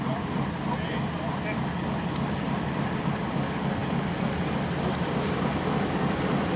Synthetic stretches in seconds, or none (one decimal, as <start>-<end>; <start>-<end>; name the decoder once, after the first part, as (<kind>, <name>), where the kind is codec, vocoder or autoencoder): none